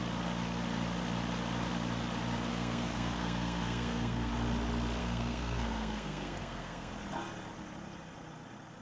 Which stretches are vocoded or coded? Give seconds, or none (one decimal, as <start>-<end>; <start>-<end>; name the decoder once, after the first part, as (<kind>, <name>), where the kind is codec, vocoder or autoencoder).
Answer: 2.5-4.3 (codec, SNAC); 5.0-6.9